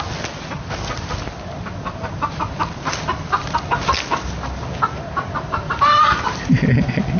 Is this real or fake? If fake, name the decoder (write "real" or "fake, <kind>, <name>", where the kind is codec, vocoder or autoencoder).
real